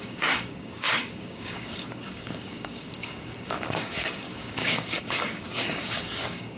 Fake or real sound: fake